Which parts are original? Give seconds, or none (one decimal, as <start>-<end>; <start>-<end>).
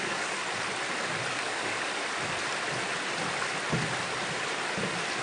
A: 0.4-1.3; 1.9-5.2